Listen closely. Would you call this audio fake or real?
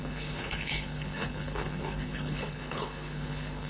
fake